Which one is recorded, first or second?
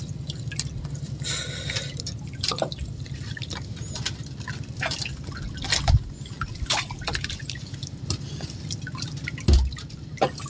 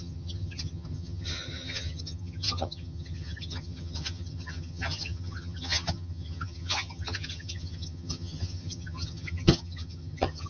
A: first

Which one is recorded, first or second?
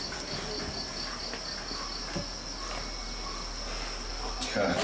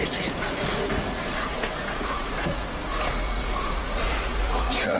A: first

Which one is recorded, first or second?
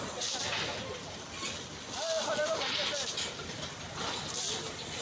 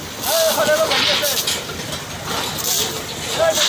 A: second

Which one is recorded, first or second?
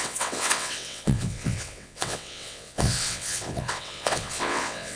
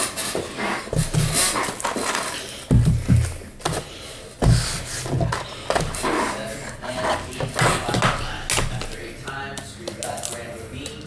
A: second